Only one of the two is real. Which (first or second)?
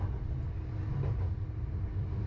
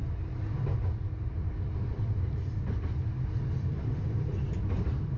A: first